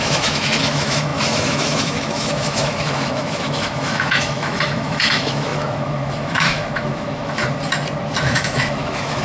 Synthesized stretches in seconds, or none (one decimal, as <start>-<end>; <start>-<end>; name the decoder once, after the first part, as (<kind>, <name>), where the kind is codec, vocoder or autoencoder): 0.0-7.4 (autoencoder, DAC-VAE); 8.2-9.2